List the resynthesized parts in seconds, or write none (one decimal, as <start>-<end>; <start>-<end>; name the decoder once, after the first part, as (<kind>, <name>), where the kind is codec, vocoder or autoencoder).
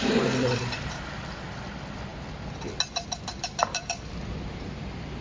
0.0-2.1 (vocoder, BigVGAN v2); 3.7-5.2